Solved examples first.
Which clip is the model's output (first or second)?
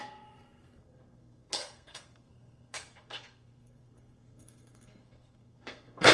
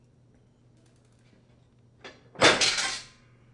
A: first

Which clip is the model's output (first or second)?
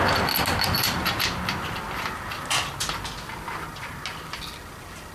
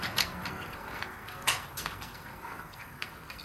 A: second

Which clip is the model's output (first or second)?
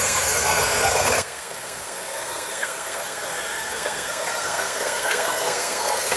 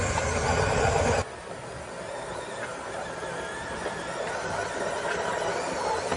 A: first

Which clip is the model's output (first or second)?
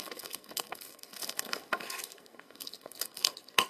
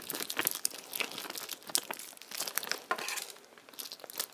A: first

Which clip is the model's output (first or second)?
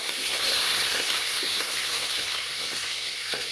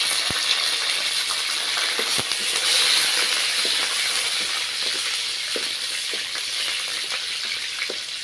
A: first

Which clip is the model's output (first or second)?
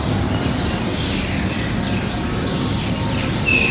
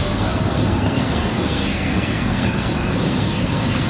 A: second